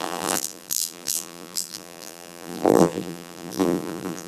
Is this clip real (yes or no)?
no